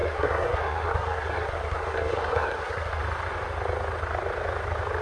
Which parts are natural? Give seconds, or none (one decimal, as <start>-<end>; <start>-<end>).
3.0-5.0